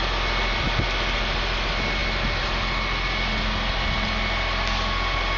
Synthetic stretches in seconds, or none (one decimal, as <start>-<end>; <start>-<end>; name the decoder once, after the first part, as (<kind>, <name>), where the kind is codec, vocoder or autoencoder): none